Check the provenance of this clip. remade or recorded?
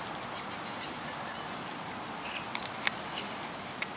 recorded